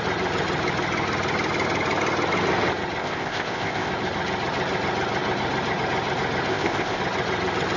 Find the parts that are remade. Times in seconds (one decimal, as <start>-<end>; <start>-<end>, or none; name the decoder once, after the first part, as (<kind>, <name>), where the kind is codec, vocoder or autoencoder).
3.0-3.9 (codec, ZipCodec); 6.5-7.0